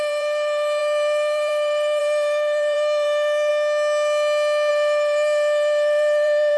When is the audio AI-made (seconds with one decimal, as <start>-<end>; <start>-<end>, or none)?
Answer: 0.0-3.5; 4.7-6.6